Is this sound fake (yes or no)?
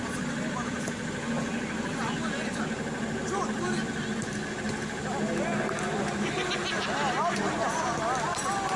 no